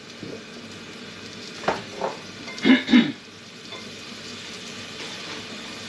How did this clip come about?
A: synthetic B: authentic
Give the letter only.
B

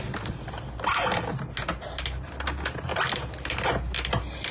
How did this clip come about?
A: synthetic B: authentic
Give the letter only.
B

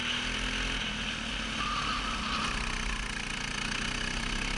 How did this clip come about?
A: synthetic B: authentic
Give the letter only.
B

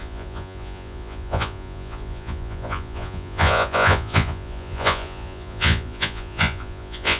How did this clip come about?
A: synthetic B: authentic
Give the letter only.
A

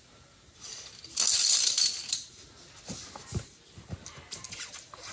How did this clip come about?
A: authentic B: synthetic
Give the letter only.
A